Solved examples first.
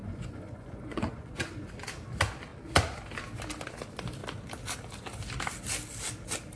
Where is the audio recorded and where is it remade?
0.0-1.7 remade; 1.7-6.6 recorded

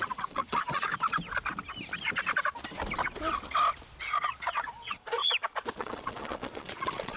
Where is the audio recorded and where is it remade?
0.0-0.9 remade; 0.9-4.0 recorded; 4.0-5.2 remade; 5.2-5.8 recorded; 5.8-7.2 remade

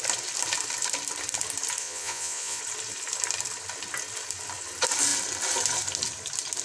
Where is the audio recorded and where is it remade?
0.0-1.8 recorded; 1.8-2.6 remade; 2.6-6.6 recorded

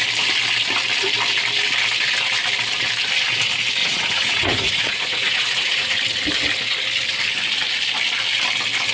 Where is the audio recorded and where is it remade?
0.0-3.8 recorded; 3.8-5.9 remade; 5.9-8.9 recorded

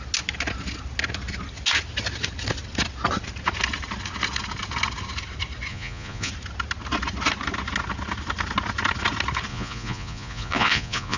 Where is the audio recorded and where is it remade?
0.0-5.7 recorded; 5.7-6.3 remade; 6.3-9.5 recorded; 9.5-11.2 remade

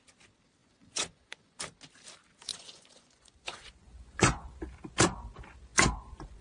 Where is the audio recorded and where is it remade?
0.0-0.6 recorded; 0.6-1.6 remade; 1.6-2.5 recorded; 2.5-4.5 remade; 4.5-5.7 recorded; 5.7-6.4 remade